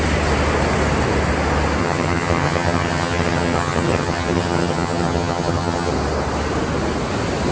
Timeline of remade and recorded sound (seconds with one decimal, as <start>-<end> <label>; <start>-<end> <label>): 0.0-1.8 recorded; 1.8-5.9 remade; 5.9-7.5 recorded